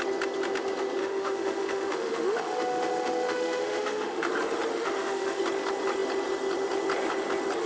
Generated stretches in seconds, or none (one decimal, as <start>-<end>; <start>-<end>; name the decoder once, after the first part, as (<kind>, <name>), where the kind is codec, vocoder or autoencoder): 1.0-4.3 (autoencoder, DAC-VAE); 4.7-5.4